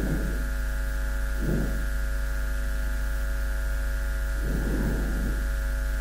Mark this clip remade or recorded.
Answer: recorded